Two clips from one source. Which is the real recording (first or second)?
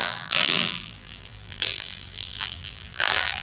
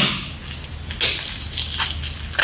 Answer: second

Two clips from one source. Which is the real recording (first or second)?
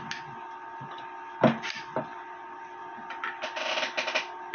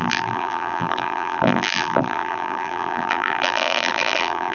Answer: first